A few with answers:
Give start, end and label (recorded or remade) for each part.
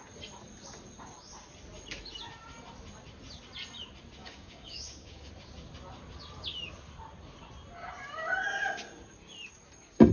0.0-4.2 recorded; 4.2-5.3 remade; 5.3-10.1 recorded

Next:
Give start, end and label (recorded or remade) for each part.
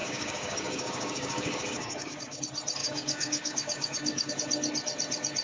0.0-2.4 remade; 2.4-2.8 recorded; 2.8-4.3 remade; 4.3-5.4 recorded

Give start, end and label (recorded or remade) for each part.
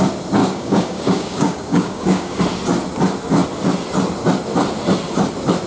0.0-0.4 recorded; 0.4-2.4 remade; 2.4-5.7 recorded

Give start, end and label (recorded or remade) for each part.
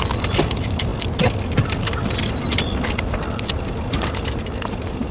0.0-5.1 recorded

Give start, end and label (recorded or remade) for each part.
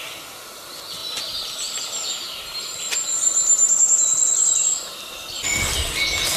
0.0-6.4 recorded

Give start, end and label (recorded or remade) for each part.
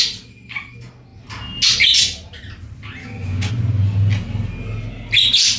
0.0-3.0 recorded; 3.0-3.5 remade; 3.5-5.6 recorded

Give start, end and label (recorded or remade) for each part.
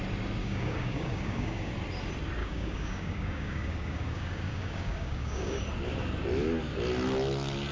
0.0-0.4 recorded; 0.4-1.7 remade; 1.7-2.4 recorded; 2.4-5.6 remade; 5.6-7.7 recorded